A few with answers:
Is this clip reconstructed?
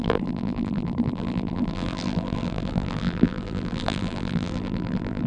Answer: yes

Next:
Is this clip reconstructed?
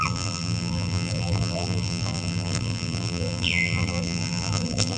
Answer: yes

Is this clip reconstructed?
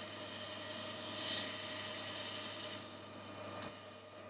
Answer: no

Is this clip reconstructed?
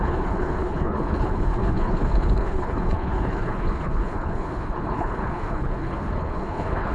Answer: yes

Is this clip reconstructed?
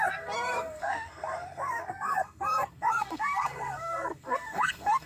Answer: yes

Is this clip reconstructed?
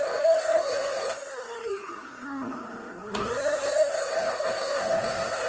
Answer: yes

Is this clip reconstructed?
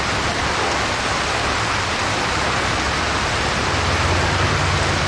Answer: no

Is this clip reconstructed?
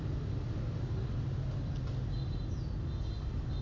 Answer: no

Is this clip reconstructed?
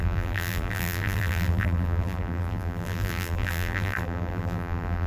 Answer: yes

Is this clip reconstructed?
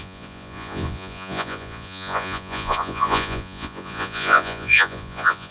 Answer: yes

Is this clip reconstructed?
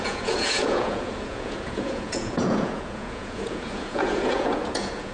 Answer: yes